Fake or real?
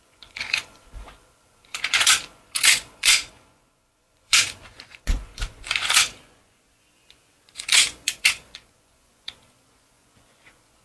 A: fake